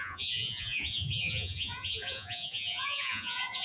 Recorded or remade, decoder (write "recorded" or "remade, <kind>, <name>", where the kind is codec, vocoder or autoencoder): remade, vocoder, Vocos